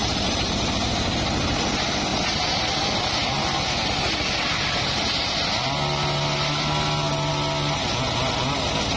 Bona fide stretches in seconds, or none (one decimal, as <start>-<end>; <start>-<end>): 0.5-2.1; 2.6-9.0